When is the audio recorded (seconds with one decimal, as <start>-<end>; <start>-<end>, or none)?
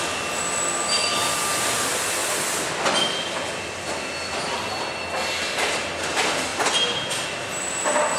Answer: 0.0-8.2